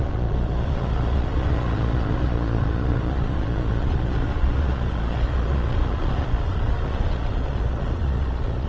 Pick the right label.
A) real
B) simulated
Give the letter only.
B